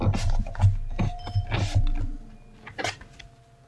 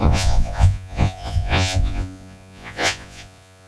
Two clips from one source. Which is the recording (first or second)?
first